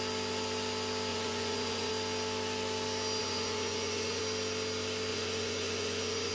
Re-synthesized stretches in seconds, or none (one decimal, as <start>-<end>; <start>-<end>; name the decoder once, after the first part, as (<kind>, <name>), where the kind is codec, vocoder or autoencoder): 1.1-1.9 (vocoder, Vocos); 3.2-4.2; 5.1-6.3